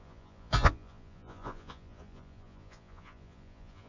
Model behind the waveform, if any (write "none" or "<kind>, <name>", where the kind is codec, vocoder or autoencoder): vocoder, Vocos